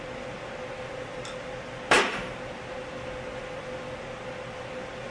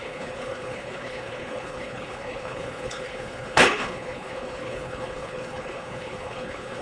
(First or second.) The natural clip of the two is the first